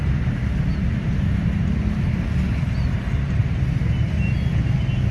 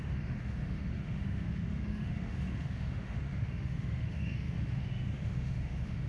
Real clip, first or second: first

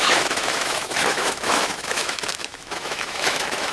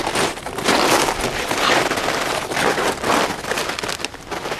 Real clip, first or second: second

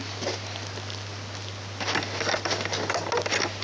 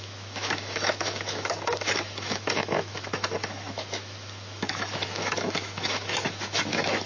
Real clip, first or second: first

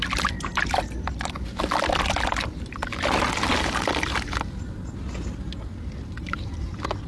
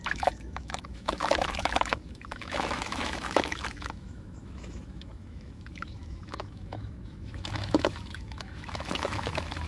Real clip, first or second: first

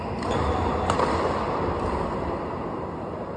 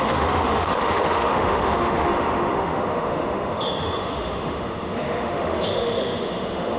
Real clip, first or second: first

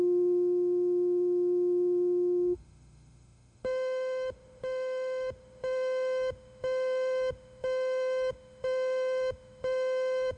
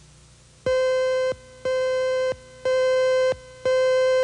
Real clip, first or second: second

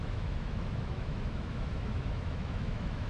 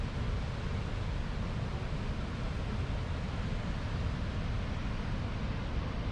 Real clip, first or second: second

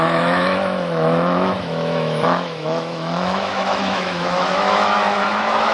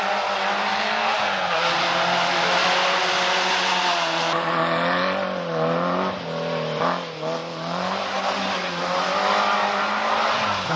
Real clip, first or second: second